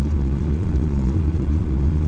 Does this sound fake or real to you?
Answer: fake